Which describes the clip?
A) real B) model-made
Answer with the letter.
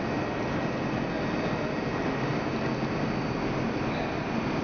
A